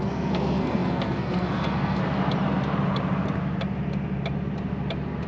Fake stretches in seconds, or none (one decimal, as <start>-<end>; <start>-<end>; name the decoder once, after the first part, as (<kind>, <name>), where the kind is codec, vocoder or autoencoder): 0.0-2.0 (codec, SNAC)